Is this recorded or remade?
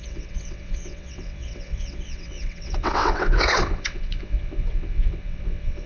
remade